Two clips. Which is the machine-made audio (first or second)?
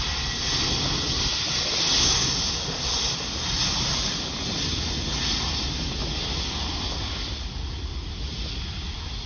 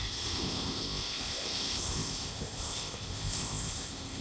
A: second